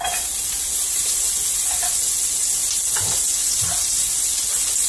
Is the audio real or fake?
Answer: real